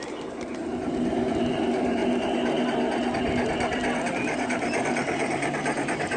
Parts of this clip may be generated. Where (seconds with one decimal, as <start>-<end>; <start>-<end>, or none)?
0.0-2.0; 4.1-6.2